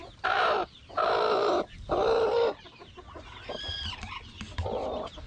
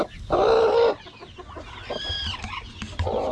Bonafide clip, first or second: second